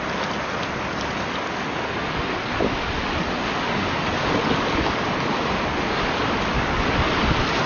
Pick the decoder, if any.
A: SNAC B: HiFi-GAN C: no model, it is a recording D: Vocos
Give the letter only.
C